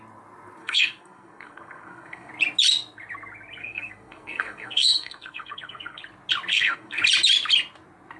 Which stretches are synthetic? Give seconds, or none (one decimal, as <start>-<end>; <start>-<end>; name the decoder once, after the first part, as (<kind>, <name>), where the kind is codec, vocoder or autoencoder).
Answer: 0.6-2.3 (codec, SNAC); 3.6-6.0; 6.5-7.0